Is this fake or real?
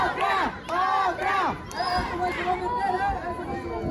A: real